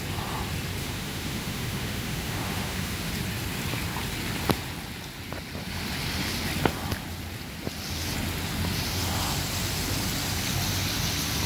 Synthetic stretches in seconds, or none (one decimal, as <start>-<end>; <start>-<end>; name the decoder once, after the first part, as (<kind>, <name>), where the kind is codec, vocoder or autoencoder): 0.8-3.1 (autoencoder, DAC-VAE)